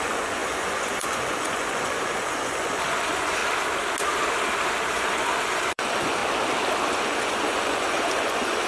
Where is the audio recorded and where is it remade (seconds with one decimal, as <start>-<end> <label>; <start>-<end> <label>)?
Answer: 0.0-3.4 remade; 3.4-4.9 recorded; 4.9-6.2 remade; 6.2-6.9 recorded; 6.9-8.7 remade